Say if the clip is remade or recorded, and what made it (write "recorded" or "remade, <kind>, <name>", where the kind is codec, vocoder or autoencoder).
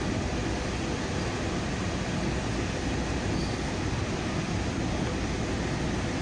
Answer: recorded